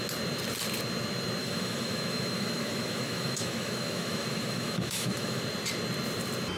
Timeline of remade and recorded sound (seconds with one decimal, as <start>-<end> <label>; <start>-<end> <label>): 0.0-1.4 recorded; 1.4-5.4 remade; 5.4-6.6 recorded